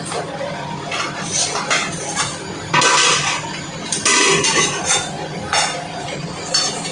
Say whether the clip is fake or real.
real